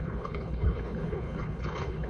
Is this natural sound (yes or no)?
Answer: no